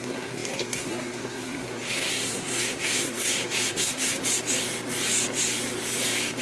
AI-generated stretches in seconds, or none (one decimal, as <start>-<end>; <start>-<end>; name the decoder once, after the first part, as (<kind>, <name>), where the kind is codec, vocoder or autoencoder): 0.0-4.2 (codec, SNAC)